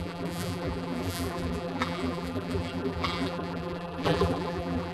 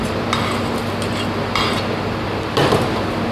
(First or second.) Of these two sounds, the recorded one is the second